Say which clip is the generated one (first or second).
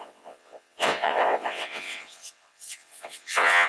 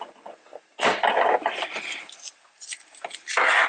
first